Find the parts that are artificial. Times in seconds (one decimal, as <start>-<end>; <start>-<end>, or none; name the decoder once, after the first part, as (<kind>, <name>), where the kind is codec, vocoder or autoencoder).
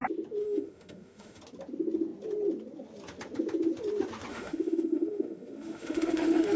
0.4-1.4 (autoencoder, DAC-VAE); 4.3-6.6